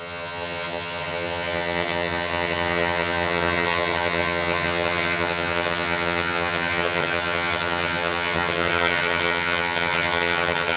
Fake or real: fake